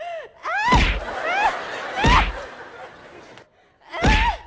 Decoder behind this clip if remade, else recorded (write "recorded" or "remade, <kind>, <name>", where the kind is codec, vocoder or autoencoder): recorded